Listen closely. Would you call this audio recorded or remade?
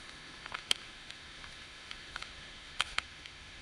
remade